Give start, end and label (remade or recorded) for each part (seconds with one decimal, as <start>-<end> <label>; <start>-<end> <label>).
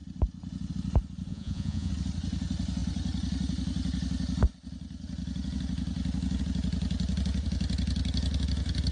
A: 0.0-1.3 recorded; 1.3-1.9 remade; 1.9-8.9 recorded